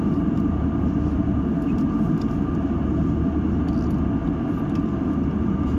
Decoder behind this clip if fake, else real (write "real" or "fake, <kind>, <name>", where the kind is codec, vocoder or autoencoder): real